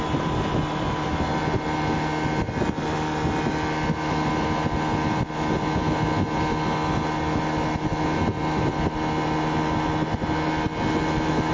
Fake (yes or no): no